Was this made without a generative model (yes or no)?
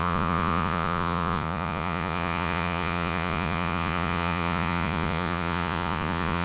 no